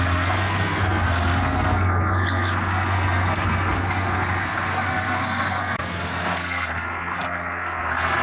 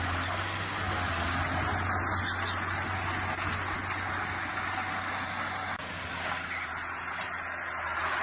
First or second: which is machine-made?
first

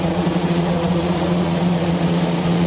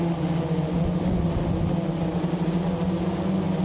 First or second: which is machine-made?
first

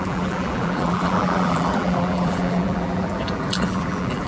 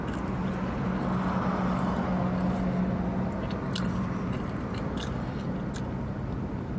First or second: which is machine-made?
first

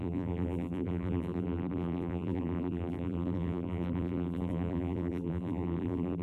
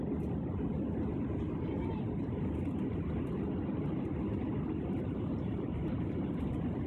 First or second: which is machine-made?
first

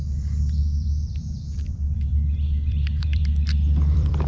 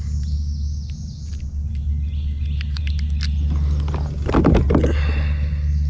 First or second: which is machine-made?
first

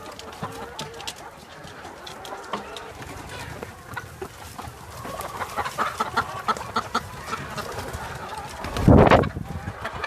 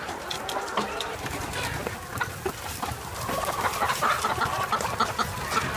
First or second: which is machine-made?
second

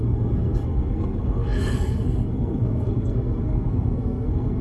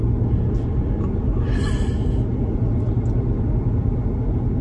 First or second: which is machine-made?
first